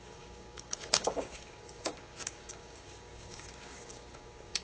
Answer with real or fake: fake